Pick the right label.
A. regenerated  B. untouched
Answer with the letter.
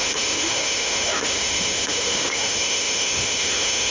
A